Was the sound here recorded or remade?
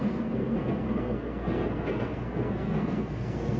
remade